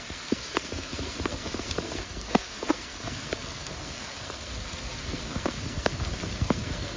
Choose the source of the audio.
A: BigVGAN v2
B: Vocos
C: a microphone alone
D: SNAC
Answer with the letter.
D